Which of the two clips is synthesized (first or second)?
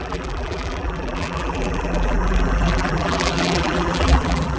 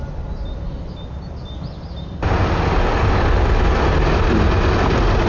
first